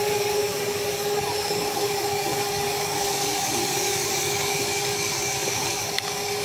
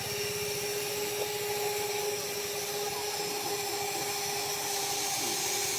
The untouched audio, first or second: second